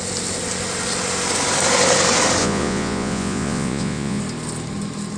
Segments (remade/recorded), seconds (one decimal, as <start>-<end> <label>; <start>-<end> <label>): 0.0-2.4 recorded; 2.4-4.2 remade; 4.2-5.2 recorded